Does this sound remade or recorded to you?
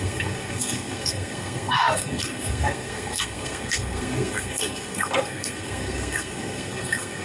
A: remade